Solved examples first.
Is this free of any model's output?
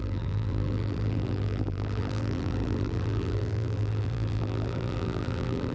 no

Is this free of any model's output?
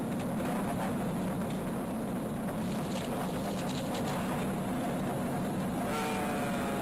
yes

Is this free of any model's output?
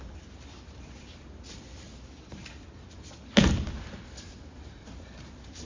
yes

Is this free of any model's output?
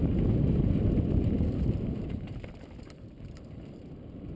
no